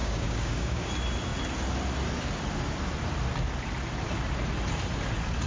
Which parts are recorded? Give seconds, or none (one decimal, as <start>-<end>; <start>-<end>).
0.9-5.5